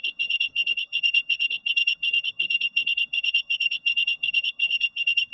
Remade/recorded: remade